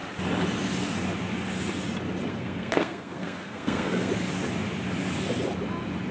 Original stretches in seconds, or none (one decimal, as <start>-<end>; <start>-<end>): 0.0-2.3; 4.1-6.1